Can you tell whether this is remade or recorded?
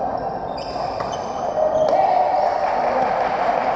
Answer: recorded